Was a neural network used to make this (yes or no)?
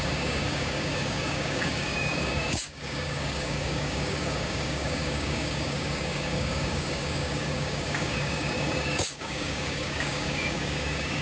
yes